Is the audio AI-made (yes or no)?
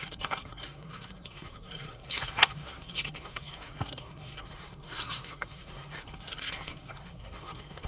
yes